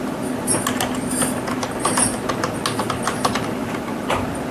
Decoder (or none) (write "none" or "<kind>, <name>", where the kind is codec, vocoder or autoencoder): none